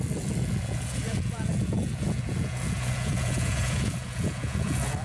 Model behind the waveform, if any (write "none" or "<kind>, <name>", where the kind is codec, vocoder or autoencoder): vocoder, Vocos